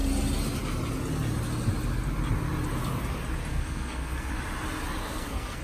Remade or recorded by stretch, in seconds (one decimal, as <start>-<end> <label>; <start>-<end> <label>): 0.0-3.5 recorded; 3.5-4.3 remade; 4.3-5.0 recorded; 5.0-5.6 remade